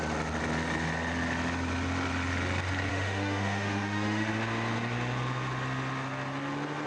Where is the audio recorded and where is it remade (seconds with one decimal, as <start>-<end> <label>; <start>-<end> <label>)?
0.0-2.9 recorded; 2.9-4.3 remade; 4.3-6.9 recorded